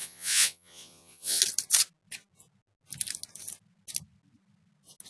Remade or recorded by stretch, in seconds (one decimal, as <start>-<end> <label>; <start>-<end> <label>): 0.0-1.4 remade; 1.4-5.1 recorded